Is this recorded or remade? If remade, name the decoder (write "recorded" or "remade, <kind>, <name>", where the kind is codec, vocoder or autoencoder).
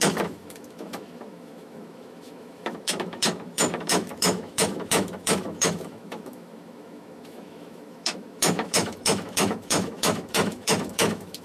remade, autoencoder, DAC-VAE